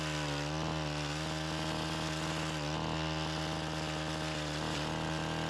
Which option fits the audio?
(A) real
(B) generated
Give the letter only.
A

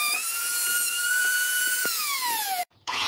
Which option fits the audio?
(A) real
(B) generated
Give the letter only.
B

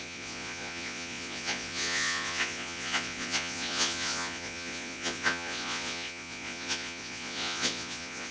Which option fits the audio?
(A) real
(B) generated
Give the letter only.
B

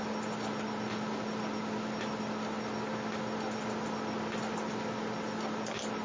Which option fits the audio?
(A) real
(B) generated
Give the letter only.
A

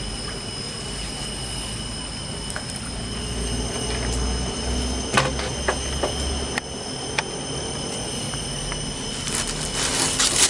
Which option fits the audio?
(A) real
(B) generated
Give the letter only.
A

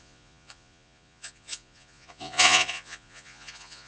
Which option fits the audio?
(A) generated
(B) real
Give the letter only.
A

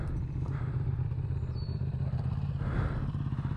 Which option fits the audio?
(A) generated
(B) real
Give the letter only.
B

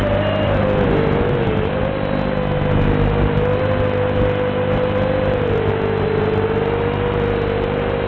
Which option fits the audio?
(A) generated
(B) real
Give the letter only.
B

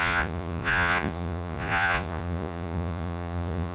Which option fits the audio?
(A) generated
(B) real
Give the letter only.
A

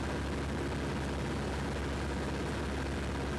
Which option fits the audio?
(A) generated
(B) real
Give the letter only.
B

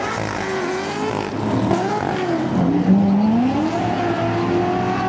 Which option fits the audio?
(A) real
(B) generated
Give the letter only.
A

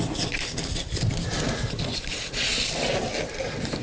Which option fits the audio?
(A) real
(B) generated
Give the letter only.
A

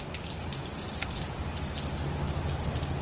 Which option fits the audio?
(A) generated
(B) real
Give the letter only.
B